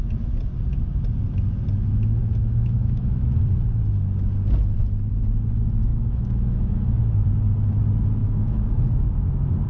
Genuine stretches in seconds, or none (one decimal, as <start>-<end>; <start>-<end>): 0.0-2.2; 3.3-5.9; 7.0-8.2; 8.9-9.7